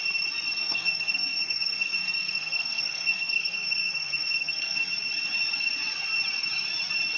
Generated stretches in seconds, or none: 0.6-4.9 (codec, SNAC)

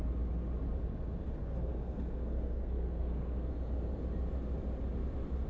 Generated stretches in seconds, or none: 1.4-3.5 (codec, SNAC)

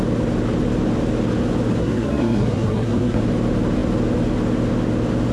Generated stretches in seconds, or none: 1.8-3.2 (codec, SNAC)

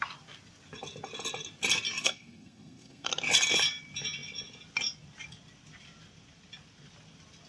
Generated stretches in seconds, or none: 2.0-3.1 (codec, SNAC)